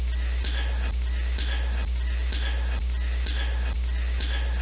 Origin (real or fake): real